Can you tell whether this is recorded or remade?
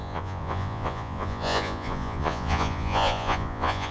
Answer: remade